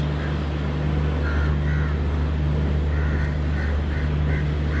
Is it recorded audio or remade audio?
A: recorded